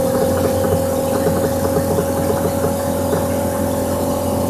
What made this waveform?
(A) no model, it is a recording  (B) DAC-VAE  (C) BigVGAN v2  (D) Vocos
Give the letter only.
A